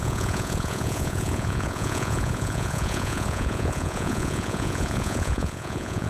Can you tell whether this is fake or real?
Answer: fake